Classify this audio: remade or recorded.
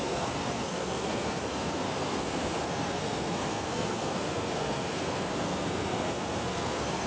remade